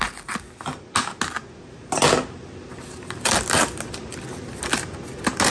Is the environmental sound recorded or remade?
recorded